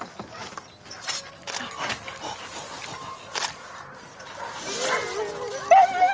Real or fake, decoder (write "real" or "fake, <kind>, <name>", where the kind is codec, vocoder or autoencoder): real